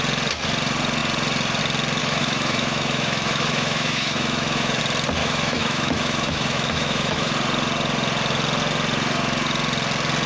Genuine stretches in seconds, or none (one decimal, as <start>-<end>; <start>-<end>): 0.0-2.0; 4.8-5.2; 7.3-10.3